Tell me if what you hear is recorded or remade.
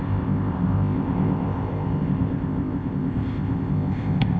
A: remade